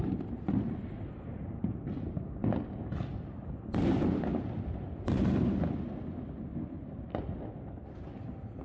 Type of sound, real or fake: real